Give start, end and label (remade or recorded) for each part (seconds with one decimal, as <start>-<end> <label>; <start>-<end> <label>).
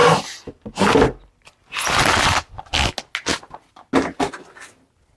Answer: 0.0-5.2 recorded